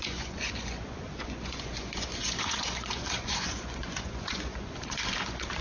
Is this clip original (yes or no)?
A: no